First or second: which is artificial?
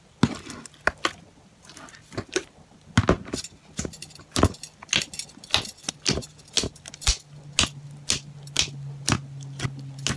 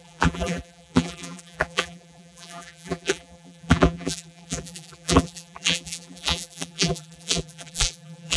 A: second